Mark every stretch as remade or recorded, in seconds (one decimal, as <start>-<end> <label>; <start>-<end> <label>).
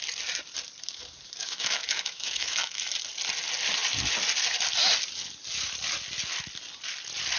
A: 0.0-1.4 recorded; 1.4-2.9 remade; 2.9-7.4 recorded